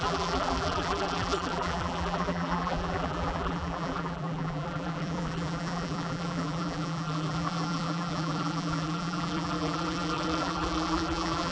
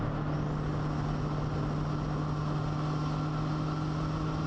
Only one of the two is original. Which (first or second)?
second